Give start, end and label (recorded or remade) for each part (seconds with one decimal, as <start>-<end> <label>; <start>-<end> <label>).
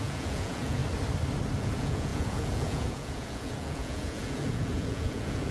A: 0.0-0.8 remade; 0.8-1.6 recorded; 1.6-5.5 remade